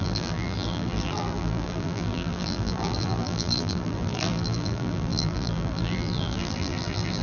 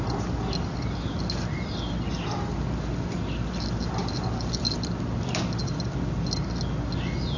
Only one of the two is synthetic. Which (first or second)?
first